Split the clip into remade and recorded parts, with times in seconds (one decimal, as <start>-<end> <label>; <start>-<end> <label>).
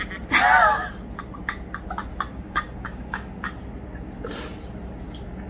0.0-2.3 recorded; 2.3-3.4 remade; 3.4-5.5 recorded